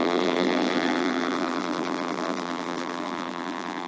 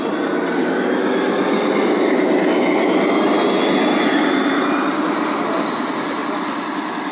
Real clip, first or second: second